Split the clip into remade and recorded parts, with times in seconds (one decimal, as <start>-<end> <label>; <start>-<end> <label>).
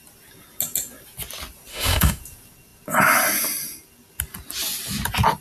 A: 0.0-1.7 recorded; 1.7-2.2 remade; 2.2-5.4 recorded